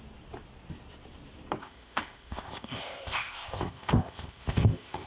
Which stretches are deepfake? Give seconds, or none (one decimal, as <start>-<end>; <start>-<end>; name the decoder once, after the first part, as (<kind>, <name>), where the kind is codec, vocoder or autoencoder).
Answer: 1.6-5.1 (codec, ZipCodec)